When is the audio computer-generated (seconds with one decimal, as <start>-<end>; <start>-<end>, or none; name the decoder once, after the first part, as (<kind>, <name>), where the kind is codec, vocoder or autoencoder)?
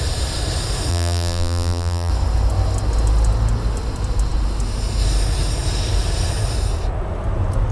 0.9-2.1 (vocoder, BigVGAN v2)